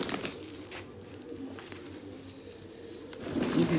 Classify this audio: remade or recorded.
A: recorded